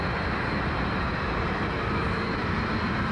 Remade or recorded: recorded